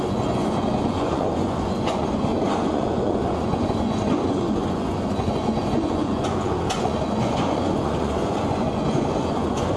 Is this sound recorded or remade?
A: remade